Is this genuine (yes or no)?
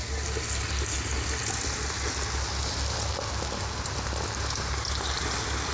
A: yes